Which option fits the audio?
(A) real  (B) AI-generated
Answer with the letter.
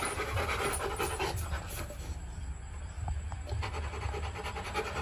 A